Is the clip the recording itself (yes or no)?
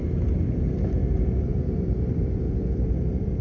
no